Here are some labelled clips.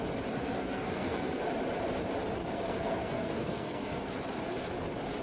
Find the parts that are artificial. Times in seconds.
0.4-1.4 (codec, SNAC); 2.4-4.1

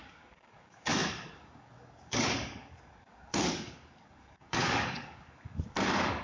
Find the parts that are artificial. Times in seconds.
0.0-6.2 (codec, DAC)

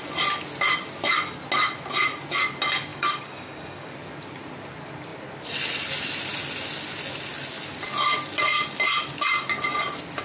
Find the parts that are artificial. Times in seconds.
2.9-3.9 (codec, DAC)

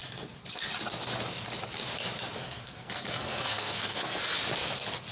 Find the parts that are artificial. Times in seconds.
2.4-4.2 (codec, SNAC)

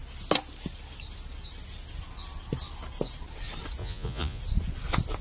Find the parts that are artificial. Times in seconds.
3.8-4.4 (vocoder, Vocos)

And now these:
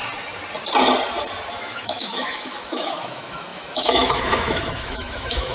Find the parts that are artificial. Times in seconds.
1.5-5.5 (autoencoder, DAC-VAE)